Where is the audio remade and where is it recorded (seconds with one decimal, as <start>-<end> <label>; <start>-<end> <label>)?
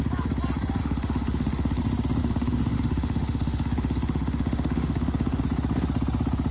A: 0.0-0.8 recorded; 0.8-1.8 remade; 1.8-2.2 recorded; 2.2-5.4 remade; 5.4-6.5 recorded